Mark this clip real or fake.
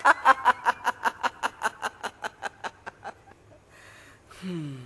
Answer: real